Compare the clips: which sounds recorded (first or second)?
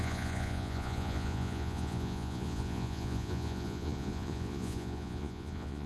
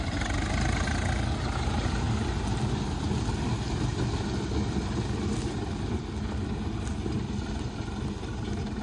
second